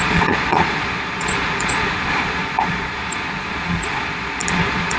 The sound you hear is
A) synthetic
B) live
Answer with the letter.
A